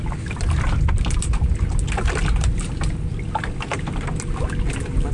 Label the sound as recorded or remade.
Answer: recorded